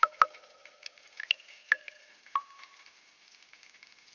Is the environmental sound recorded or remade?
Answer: recorded